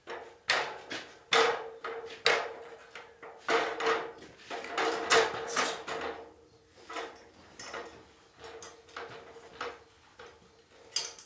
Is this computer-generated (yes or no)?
no